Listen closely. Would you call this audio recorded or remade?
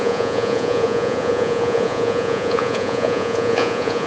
remade